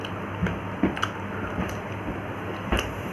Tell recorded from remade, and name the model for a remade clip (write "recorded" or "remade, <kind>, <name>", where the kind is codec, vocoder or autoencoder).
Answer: recorded